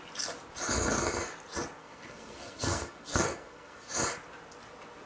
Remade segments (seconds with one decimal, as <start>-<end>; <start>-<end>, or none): 1.8-3.9